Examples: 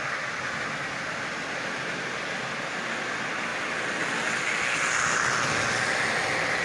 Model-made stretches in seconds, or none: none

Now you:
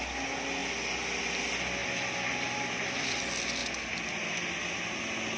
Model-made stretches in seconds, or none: none